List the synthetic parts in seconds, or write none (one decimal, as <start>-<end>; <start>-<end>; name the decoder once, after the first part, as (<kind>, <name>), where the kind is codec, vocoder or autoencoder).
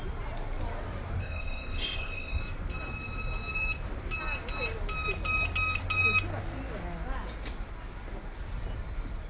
1.2-2.4 (codec, ZipCodec)